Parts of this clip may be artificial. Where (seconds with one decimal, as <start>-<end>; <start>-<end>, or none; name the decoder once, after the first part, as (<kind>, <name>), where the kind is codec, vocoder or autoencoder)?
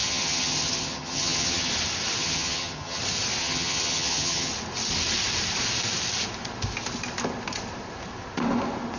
0.0-1.7 (vocoder, HiFi-GAN); 2.2-3.0; 3.4-4.5